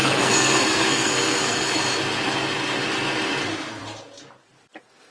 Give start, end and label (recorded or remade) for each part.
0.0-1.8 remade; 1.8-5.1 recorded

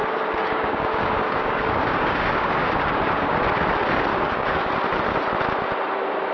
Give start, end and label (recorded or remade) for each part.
0.0-3.3 remade; 3.3-4.1 recorded; 4.1-4.7 remade; 4.7-6.3 recorded